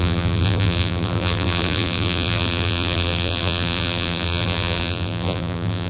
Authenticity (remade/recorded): remade